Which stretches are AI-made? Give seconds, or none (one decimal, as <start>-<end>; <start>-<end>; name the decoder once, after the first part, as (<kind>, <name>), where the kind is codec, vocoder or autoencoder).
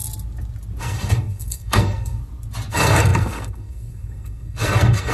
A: 0.8-2.2 (codec, SNAC); 2.7-5.1